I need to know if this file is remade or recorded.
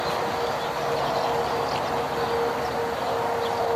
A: recorded